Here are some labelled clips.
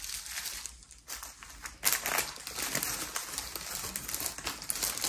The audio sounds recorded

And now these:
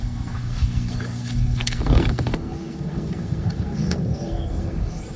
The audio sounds remade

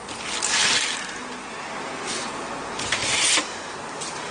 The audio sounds recorded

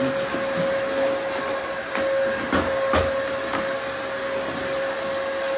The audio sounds recorded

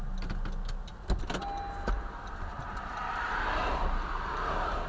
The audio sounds recorded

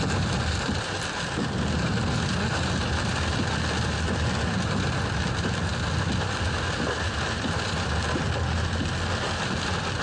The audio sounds recorded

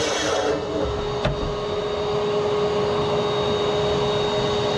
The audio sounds recorded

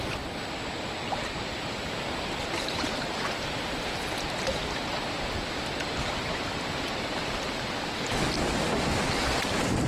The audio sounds remade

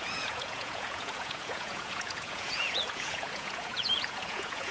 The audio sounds remade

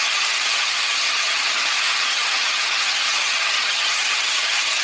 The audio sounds remade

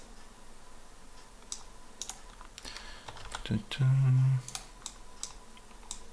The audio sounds recorded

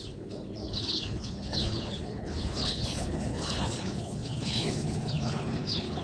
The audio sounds remade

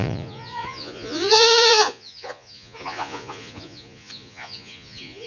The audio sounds remade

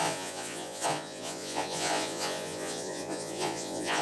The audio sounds remade